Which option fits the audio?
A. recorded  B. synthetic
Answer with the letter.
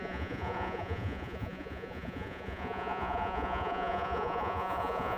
B